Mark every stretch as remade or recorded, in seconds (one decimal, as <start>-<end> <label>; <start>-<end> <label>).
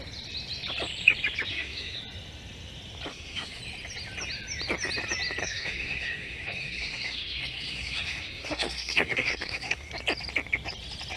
0.0-1.5 recorded; 1.5-2.0 remade; 2.0-3.1 recorded; 3.1-3.6 remade; 3.6-5.4 recorded; 5.4-9.9 remade; 9.9-11.2 recorded